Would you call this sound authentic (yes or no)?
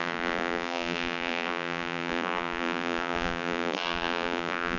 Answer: no